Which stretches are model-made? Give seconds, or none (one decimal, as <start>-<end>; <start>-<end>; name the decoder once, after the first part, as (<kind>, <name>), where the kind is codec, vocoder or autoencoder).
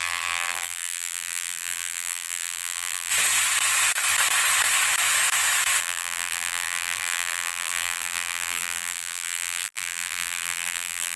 0.0-3.1 (vocoder, BigVGAN v2); 5.8-11.2